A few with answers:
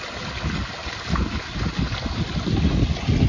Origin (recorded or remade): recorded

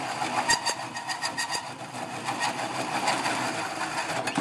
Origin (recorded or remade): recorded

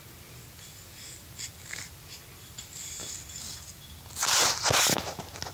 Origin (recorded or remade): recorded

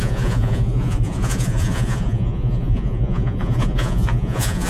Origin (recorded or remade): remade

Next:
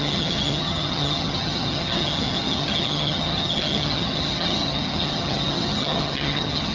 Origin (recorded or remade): remade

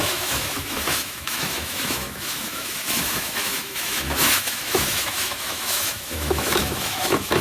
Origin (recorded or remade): remade